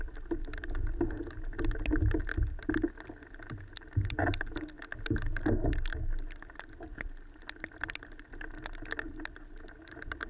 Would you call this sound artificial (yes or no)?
no